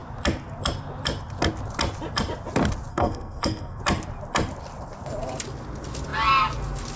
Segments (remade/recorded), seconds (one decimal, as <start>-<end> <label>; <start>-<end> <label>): 0.0-2.9 recorded; 2.9-3.8 remade; 3.8-7.0 recorded